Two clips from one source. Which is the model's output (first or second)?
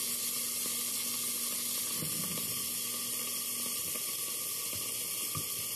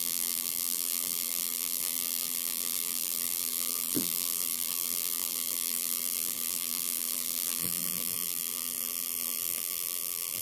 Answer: second